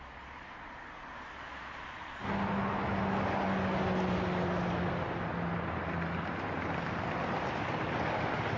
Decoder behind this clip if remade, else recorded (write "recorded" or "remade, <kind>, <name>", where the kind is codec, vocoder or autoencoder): recorded